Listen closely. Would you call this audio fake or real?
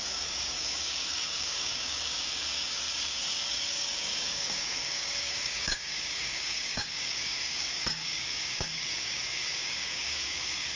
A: fake